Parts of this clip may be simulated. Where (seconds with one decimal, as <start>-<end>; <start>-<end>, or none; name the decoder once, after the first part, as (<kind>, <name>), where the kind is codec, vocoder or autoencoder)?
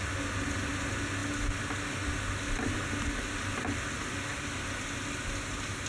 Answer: none